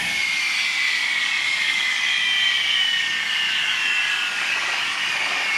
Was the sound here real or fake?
fake